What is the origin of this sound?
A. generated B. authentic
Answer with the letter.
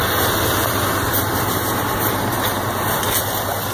B